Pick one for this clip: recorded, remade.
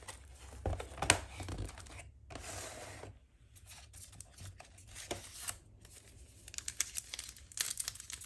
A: recorded